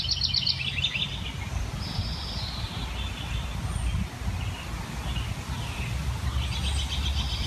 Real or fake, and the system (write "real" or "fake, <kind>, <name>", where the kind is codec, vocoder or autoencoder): real